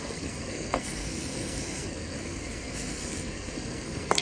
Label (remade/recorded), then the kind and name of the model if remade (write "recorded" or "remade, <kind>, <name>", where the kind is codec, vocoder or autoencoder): remade, codec, SNAC